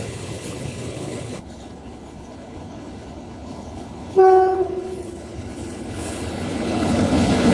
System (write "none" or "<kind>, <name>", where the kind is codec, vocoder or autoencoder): codec, HILCodec